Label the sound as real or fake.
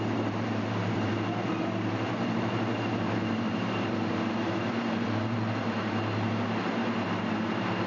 fake